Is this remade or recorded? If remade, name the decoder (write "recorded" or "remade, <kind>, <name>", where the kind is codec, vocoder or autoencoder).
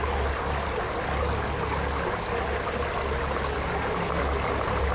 recorded